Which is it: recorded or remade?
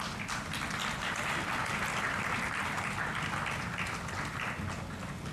recorded